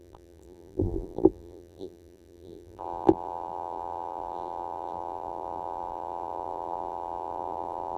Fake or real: fake